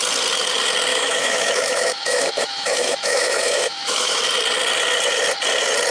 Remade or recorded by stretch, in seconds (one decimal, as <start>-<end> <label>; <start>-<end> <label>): 0.0-0.9 recorded; 0.9-4.2 remade; 4.2-5.9 recorded